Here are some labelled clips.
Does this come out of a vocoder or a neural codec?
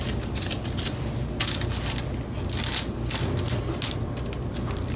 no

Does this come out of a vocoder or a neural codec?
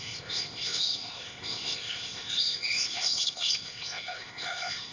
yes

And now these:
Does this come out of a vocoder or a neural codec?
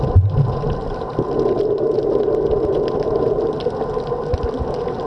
no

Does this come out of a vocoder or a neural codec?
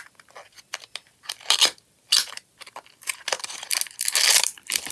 no